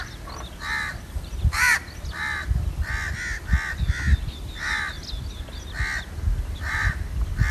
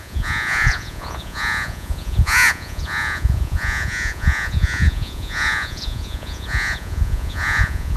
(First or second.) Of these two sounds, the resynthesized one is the second